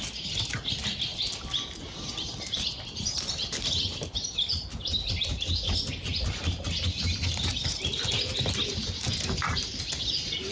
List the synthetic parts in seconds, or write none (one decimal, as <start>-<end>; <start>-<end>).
none